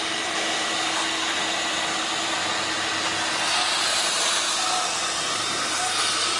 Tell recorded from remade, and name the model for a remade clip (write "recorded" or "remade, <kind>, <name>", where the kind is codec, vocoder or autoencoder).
recorded